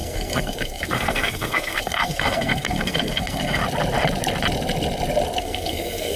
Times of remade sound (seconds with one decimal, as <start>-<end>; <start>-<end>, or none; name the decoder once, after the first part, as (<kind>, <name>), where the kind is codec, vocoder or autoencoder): 0.0-3.6 (codec, SNAC); 5.4-6.2